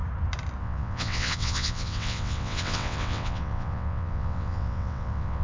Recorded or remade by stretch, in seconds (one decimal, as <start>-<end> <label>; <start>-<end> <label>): 0.0-0.6 recorded; 0.6-5.4 remade